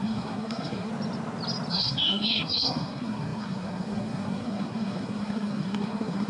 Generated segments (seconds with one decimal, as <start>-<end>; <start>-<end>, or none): 0.0-0.9; 1.7-6.3